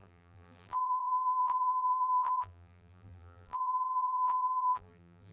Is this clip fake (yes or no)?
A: yes